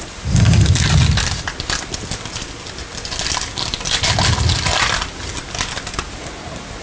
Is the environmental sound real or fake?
real